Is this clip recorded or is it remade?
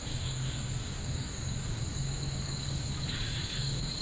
remade